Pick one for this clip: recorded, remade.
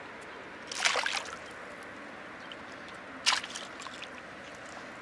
recorded